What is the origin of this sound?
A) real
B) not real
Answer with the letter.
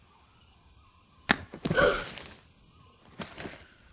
A